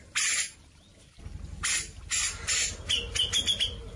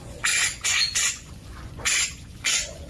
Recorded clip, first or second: first